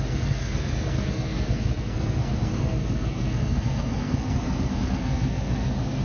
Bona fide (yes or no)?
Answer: no